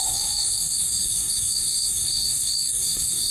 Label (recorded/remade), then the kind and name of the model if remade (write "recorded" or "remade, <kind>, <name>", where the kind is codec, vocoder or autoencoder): remade, codec, DAC